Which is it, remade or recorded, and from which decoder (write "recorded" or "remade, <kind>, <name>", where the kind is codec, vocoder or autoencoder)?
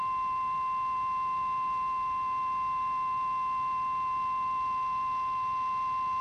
recorded